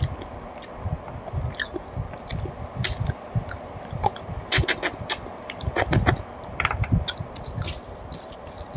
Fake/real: real